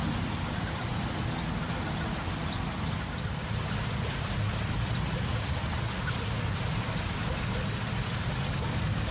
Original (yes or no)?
yes